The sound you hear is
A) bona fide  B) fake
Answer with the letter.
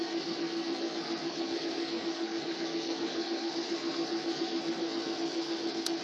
B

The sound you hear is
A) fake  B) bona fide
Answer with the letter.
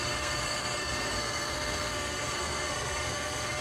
A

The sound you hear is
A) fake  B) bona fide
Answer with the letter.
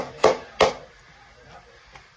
B